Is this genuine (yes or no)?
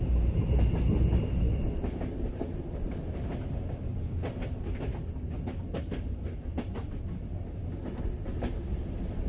yes